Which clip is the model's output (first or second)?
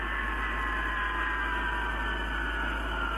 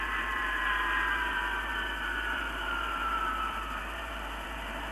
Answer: second